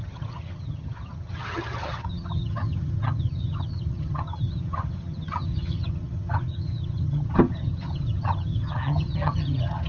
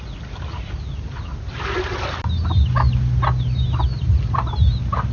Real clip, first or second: second